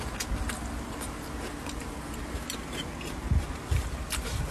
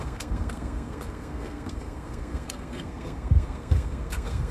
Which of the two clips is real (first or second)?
first